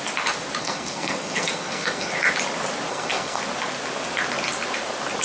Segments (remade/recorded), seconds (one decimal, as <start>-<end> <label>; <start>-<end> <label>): 0.0-0.6 recorded; 0.6-2.1 remade; 2.1-2.9 recorded; 2.9-3.4 remade; 3.4-5.2 recorded